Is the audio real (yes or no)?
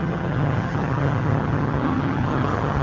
no